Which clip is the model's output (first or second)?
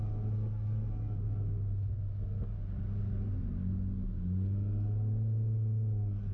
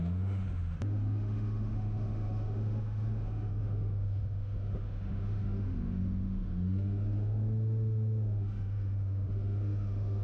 second